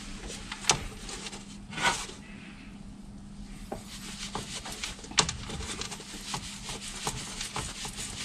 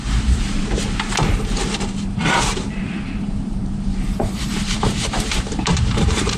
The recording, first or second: first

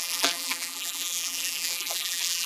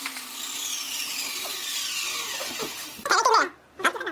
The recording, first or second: second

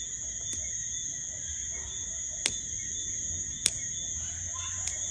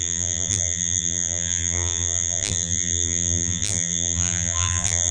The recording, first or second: first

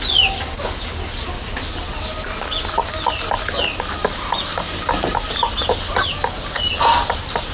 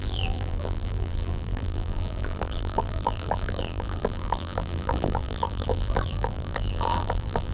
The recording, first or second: first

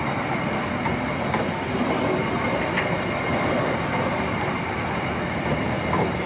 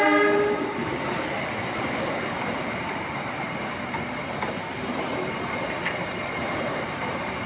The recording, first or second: first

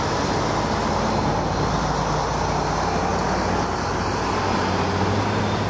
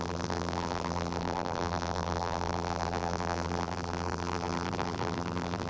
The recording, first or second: first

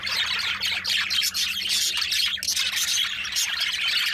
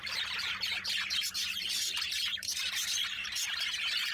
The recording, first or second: first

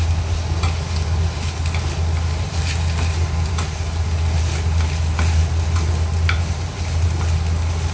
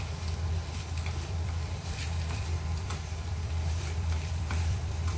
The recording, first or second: first